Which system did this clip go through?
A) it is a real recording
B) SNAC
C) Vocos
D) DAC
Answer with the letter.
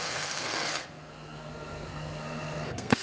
B